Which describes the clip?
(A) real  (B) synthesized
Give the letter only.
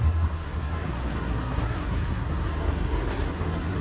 B